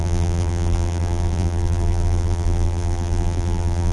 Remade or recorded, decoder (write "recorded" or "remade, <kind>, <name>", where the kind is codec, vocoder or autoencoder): remade, vocoder, BigVGAN v2